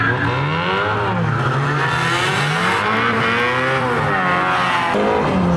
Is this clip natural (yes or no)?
yes